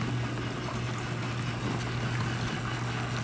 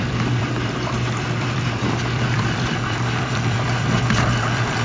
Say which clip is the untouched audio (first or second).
first